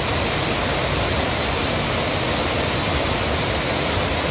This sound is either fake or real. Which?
real